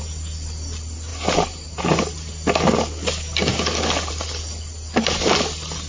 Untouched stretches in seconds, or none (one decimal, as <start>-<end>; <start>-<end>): 0.0-5.9